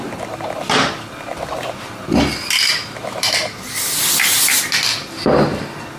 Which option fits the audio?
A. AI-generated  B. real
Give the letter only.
B